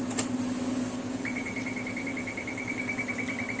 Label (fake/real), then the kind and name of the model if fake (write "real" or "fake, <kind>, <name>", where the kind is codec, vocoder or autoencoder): real